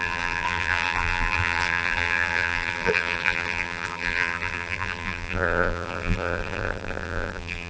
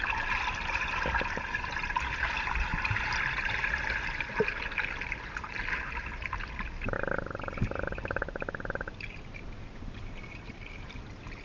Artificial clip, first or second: first